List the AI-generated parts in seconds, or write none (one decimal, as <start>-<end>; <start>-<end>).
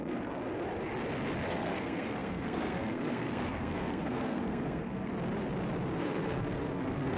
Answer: 0.0-0.5; 1.5-5.1; 6.0-7.2